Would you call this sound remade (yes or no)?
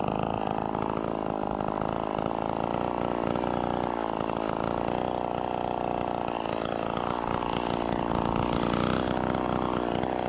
no